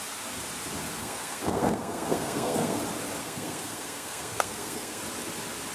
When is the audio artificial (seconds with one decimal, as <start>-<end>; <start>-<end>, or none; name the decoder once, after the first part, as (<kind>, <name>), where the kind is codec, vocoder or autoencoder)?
1.0-2.8 (codec, SNAC); 3.2-5.0